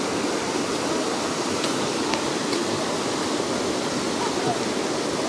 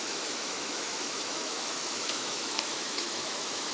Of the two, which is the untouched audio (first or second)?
first